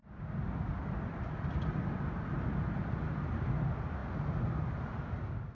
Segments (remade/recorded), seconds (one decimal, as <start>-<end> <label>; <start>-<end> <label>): 0.0-5.5 recorded